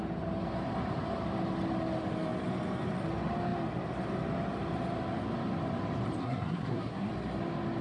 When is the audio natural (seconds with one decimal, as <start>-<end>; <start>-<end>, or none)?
0.0-6.2; 7.1-7.8